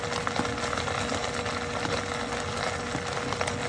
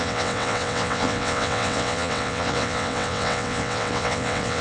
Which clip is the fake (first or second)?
second